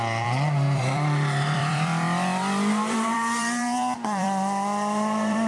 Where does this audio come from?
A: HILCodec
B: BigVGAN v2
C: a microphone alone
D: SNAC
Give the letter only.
B